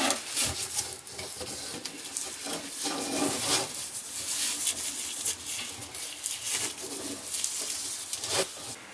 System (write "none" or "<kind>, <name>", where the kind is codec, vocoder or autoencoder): none